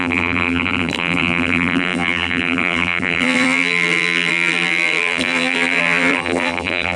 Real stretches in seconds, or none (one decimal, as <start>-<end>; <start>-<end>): none